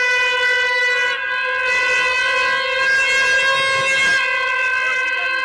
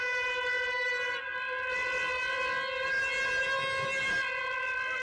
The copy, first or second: second